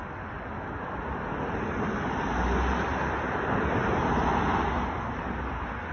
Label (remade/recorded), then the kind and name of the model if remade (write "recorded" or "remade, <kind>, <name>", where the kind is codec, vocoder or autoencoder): recorded